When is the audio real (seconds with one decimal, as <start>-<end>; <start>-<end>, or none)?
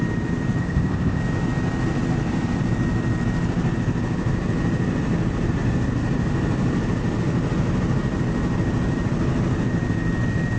0.0-0.6; 1.2-10.6